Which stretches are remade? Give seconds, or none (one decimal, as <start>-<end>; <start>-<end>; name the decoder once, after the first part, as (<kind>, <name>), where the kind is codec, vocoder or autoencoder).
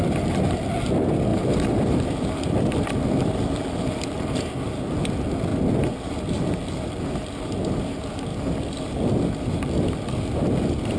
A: none